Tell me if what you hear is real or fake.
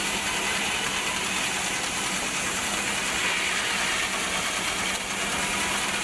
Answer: real